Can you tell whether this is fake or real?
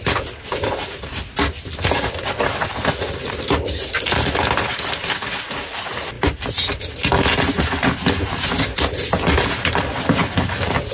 real